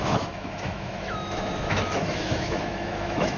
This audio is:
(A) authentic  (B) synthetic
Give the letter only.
B